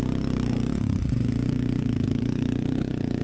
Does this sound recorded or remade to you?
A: remade